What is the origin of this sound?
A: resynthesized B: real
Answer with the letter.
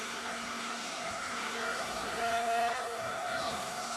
A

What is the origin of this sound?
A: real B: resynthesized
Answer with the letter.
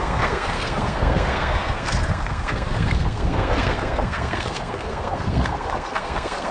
B